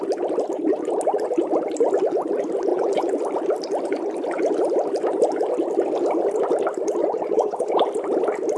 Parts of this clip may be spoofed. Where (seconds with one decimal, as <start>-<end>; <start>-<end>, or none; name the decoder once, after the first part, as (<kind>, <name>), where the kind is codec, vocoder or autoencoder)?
2.7-3.2 (vocoder, Vocos); 7.0-7.7